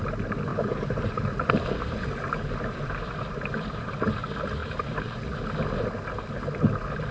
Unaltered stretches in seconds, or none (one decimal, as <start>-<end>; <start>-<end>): 0.0-0.5; 3.8-4.6; 5.2-7.1